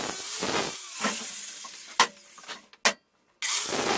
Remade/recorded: recorded